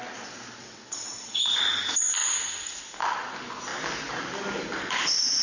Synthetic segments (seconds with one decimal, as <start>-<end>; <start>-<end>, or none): 0.6-1.4